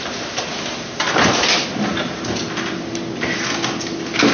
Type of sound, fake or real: real